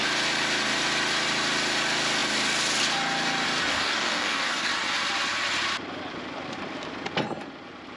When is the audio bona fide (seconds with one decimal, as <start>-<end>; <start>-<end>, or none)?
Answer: 0.0-3.7; 4.7-8.0